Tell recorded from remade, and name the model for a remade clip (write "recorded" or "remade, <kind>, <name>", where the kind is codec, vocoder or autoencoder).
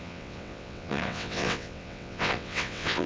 remade, vocoder, WaveNeXt